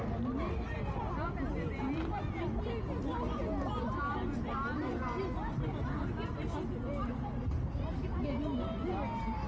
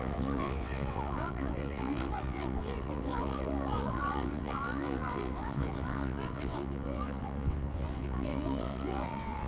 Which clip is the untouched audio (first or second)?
first